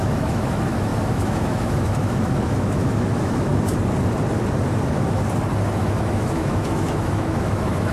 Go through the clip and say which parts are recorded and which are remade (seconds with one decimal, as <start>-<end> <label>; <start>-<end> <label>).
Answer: 0.0-3.5 remade; 3.5-5.8 recorded; 5.8-7.9 remade